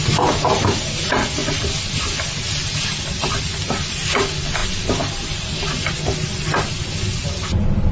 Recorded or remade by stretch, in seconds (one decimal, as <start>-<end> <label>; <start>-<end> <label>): 0.0-7.9 recorded